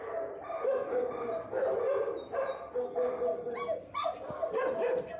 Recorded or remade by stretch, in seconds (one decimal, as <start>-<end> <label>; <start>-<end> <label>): 0.0-5.2 recorded

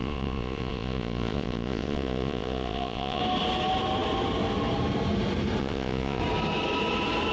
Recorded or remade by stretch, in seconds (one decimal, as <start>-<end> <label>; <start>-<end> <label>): 0.0-3.2 remade; 3.2-5.6 recorded; 5.6-6.2 remade; 6.2-7.3 recorded